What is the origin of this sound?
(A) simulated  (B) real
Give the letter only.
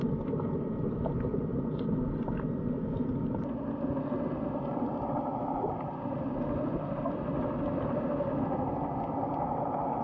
B